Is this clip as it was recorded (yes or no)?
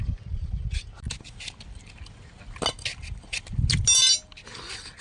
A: yes